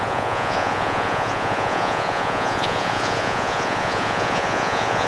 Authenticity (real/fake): fake